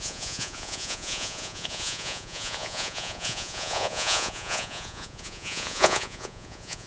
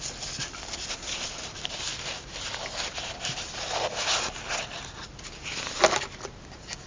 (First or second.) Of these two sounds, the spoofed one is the first